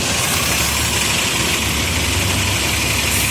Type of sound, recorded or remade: recorded